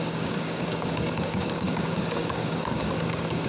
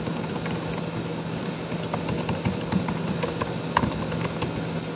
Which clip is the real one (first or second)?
second